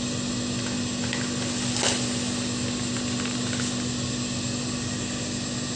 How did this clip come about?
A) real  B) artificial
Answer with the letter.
A